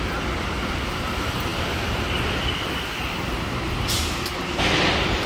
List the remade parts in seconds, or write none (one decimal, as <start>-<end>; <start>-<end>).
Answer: none